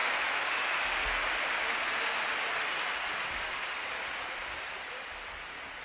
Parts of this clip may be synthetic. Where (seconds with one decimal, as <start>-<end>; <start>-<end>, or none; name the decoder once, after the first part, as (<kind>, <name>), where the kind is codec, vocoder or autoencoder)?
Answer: none